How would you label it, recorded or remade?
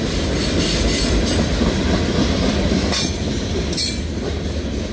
recorded